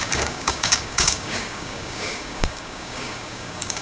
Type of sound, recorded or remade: remade